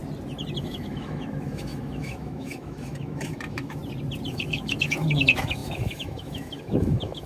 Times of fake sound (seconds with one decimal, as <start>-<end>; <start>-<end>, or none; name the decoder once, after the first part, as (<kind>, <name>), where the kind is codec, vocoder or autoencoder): 0.6-3.8 (autoencoder, DAC-VAE); 4.3-7.3